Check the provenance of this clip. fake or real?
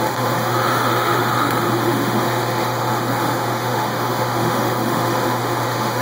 fake